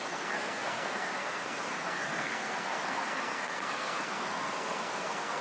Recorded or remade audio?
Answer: remade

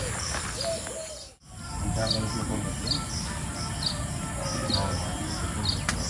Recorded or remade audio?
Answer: recorded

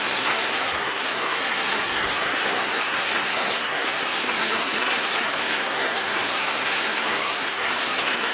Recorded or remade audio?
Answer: remade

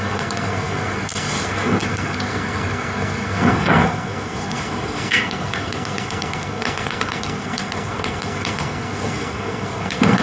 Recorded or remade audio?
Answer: remade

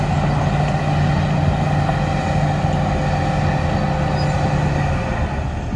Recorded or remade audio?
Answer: recorded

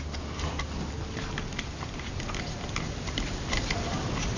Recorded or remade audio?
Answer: recorded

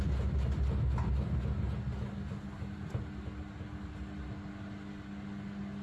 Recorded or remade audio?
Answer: recorded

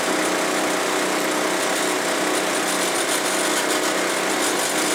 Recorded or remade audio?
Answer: recorded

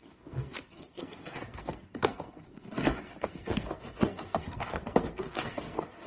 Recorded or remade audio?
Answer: remade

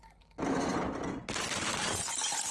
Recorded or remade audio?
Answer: recorded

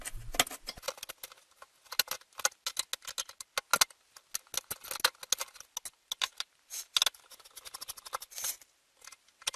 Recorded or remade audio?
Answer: recorded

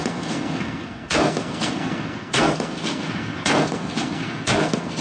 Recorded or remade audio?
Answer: remade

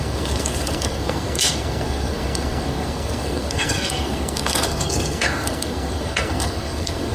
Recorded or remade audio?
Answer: remade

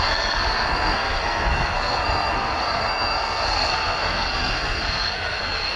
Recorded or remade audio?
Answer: remade